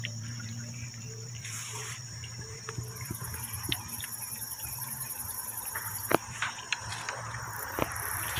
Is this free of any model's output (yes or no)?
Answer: no